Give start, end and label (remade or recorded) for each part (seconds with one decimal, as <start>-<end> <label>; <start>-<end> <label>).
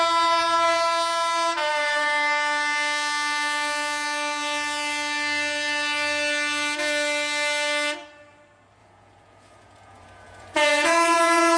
0.0-8.8 recorded; 8.8-11.6 remade